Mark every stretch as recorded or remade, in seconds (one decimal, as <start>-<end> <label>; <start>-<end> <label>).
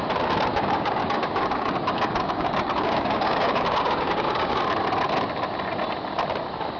0.0-0.5 recorded; 0.5-4.6 remade; 4.6-6.8 recorded